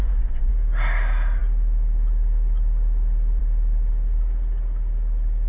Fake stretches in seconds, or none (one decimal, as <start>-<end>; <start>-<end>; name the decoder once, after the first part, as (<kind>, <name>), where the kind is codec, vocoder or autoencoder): 0.0-0.5 (vocoder, Vocos)